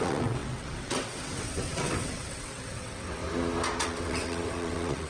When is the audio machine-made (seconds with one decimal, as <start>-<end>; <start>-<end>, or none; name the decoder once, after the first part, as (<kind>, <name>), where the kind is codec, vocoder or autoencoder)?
0.0-3.2 (vocoder, WaveNeXt); 3.8-5.1

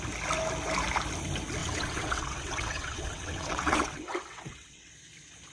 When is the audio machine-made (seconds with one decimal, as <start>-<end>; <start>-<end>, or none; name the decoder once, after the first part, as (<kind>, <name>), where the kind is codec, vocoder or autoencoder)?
1.6-4.9 (vocoder, WaveNeXt)

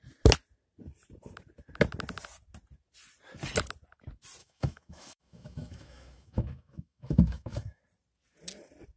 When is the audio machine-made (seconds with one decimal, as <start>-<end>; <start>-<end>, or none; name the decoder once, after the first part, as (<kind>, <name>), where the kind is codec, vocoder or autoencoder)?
4.4-7.8 (autoencoder, DAC-VAE)

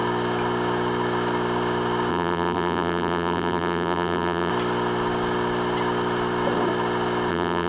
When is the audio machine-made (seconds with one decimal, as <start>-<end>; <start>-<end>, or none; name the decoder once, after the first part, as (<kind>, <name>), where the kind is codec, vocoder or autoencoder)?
2.1-4.5 (vocoder, BigVGAN v2); 7.3-7.7